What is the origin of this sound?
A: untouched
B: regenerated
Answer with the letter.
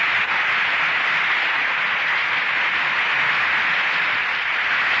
A